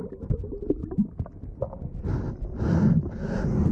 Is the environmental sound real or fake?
real